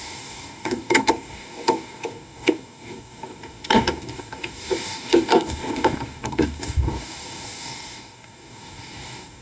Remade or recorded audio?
remade